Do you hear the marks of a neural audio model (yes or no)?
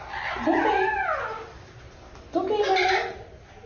no